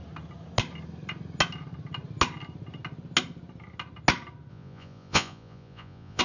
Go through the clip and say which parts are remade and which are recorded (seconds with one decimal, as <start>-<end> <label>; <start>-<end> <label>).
0.0-4.5 recorded; 4.5-6.2 remade